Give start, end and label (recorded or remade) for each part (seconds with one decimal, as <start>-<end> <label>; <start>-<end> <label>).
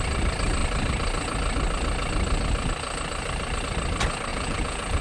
0.0-4.3 recorded; 4.3-5.0 remade